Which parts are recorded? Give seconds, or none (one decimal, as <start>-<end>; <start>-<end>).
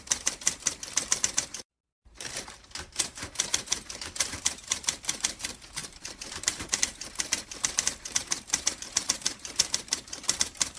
none